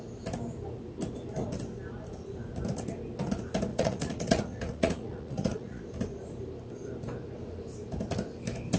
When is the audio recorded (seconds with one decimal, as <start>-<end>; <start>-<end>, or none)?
0.0-3.7; 5.8-8.8